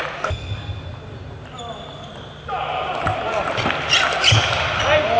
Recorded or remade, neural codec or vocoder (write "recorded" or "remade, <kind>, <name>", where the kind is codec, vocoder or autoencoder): recorded